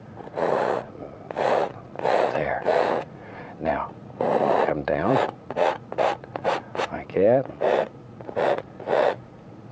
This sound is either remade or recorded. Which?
remade